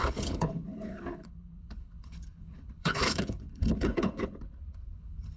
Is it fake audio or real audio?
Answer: fake